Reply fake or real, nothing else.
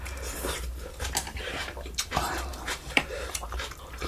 fake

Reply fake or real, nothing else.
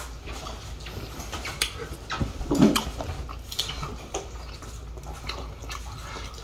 real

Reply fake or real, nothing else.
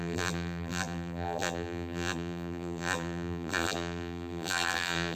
fake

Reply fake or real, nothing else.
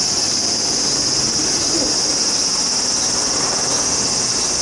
real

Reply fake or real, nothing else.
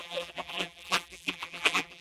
fake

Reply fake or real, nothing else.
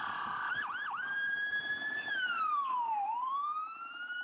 fake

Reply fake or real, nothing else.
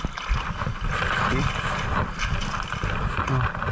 fake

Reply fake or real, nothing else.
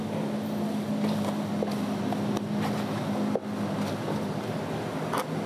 real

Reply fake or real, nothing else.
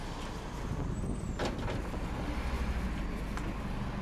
real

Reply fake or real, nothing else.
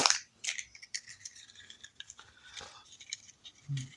fake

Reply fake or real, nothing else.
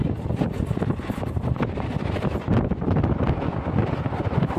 real